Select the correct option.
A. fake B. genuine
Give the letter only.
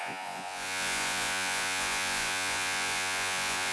A